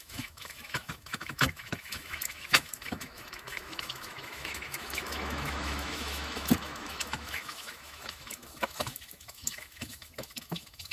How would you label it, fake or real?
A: fake